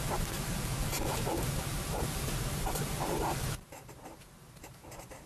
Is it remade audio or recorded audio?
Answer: remade